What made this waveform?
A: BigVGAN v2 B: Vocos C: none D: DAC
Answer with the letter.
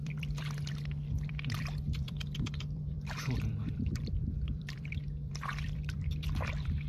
A